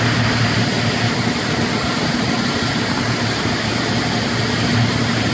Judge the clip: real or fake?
real